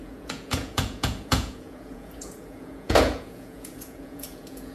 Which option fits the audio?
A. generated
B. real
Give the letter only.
A